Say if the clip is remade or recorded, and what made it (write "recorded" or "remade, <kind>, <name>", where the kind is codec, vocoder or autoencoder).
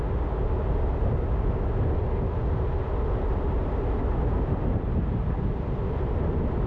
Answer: recorded